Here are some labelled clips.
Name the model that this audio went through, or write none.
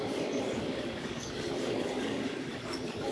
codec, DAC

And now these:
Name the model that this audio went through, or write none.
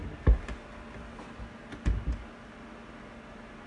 none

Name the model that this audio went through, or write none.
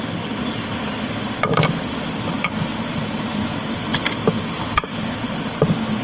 none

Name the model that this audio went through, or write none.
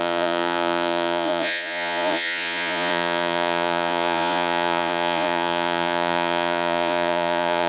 vocoder, Vocos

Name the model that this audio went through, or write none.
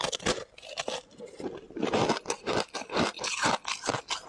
none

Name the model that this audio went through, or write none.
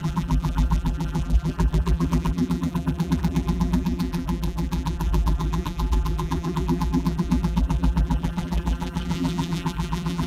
vocoder, BigVGAN v2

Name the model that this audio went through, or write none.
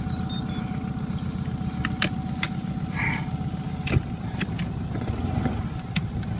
none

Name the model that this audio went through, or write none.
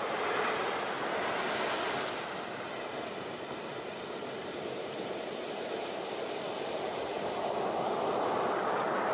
none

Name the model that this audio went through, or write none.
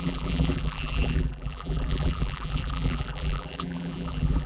vocoder, BigVGAN v2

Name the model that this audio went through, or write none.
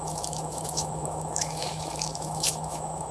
autoencoder, DAC-VAE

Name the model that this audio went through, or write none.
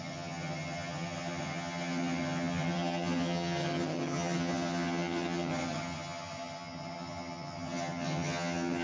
vocoder, HiFi-GAN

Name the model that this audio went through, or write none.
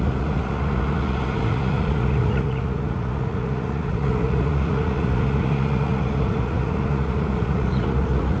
vocoder, Vocos